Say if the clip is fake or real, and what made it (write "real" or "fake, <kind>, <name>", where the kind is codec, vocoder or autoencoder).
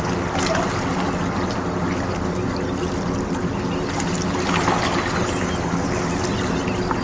real